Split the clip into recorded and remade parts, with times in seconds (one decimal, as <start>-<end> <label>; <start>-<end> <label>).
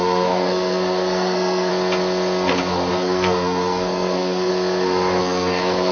0.0-1.7 remade; 1.7-2.9 recorded; 2.9-4.5 remade; 4.5-5.2 recorded; 5.2-5.9 remade